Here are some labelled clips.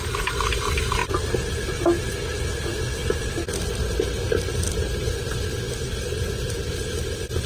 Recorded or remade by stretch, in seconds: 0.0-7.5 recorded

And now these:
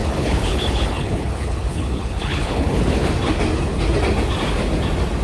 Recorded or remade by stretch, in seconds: 0.0-3.1 remade; 3.1-5.2 recorded